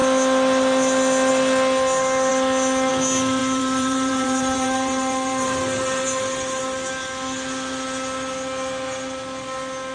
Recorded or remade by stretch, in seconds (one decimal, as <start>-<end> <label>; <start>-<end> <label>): 0.0-3.4 recorded; 3.4-6.6 remade; 6.6-9.9 recorded